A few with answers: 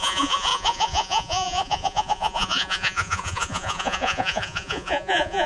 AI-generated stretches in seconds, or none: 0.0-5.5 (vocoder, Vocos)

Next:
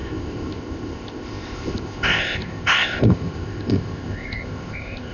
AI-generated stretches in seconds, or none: 0.0-5.1 (codec, ZipCodec)